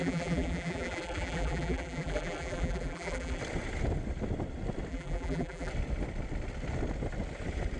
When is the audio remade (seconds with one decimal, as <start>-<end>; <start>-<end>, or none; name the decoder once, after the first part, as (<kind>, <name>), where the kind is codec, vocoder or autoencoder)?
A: 0.0-3.4 (vocoder, BigVGAN v2); 4.9-5.7